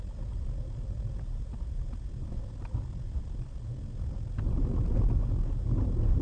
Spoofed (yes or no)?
no